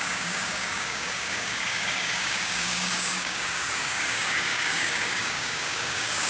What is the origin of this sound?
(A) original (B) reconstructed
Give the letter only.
B